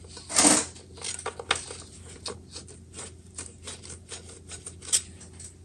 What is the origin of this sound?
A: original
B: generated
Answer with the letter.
A